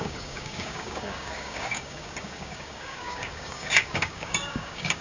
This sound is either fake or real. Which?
fake